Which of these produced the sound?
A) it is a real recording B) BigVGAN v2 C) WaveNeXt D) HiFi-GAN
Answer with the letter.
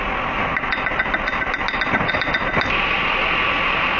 A